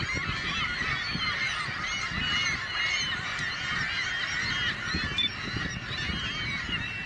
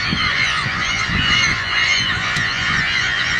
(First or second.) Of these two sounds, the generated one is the second